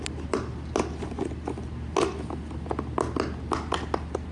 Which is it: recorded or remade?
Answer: recorded